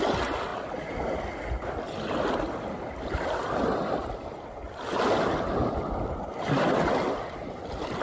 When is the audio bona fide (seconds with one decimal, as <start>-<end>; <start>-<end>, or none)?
0.0-8.0